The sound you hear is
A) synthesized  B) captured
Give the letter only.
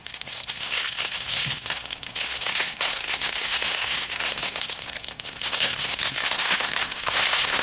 A